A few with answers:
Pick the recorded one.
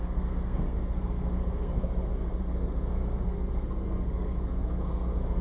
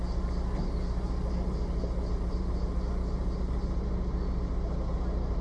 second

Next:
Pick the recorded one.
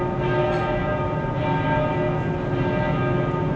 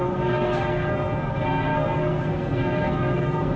first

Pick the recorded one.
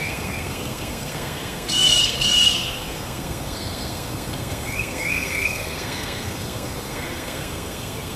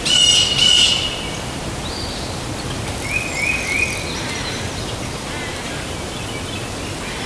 second